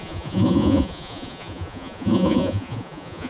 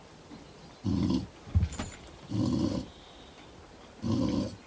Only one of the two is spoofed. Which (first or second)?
first